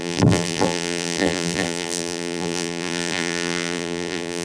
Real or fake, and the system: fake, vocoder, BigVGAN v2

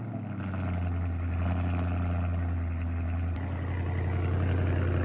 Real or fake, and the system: real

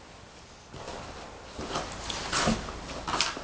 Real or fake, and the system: real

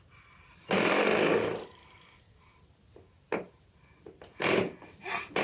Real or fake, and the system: real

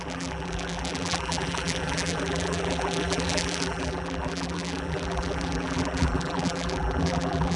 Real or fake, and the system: fake, vocoder, BigVGAN v2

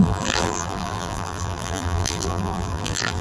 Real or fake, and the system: fake, vocoder, BigVGAN v2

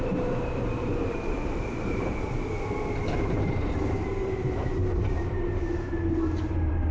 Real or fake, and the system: fake, vocoder, BigVGAN v2